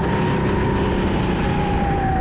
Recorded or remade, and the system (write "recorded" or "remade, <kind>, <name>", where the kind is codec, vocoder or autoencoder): recorded